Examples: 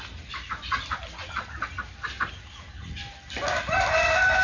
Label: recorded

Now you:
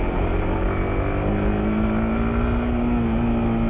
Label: recorded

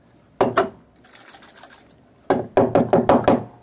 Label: recorded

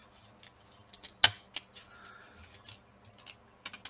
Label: recorded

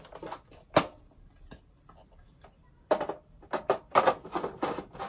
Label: recorded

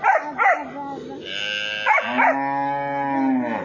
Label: recorded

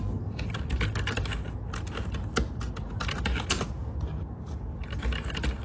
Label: recorded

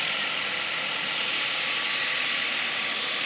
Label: recorded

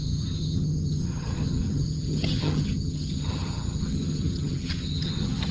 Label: remade